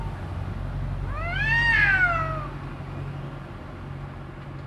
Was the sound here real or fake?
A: real